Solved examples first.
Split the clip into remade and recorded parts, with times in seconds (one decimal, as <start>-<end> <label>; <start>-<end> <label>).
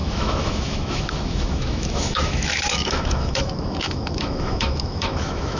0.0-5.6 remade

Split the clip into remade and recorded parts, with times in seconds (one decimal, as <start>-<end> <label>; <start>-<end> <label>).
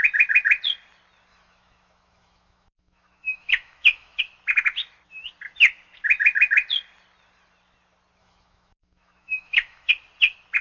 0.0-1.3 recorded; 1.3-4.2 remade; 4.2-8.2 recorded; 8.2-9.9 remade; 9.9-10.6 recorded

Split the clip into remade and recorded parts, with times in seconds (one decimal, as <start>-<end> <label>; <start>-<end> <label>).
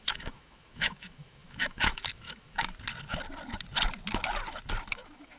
0.0-2.7 remade; 2.7-4.9 recorded; 4.9-5.4 remade